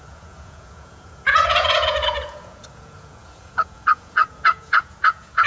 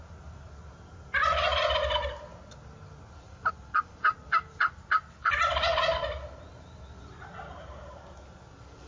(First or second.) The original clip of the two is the second